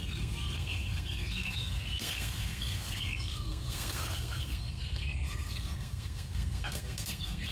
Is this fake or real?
fake